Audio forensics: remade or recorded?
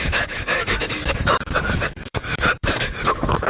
remade